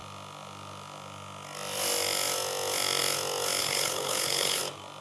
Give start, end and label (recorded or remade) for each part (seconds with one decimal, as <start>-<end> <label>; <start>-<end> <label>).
0.0-3.6 recorded; 3.6-4.6 remade; 4.6-5.0 recorded